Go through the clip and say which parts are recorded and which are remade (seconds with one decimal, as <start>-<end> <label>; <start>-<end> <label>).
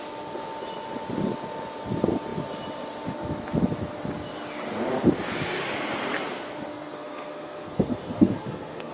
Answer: 0.0-6.7 recorded; 6.7-8.9 remade